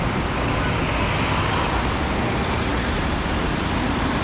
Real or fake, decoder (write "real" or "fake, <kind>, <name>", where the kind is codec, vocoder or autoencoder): real